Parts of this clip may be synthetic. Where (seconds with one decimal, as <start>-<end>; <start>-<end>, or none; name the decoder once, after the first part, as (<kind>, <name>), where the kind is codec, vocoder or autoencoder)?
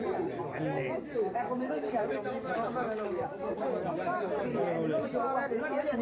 1.2-3.6 (codec, DAC)